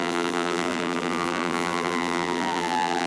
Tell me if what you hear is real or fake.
fake